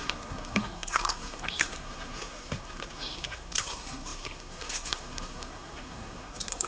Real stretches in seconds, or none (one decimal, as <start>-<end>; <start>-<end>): none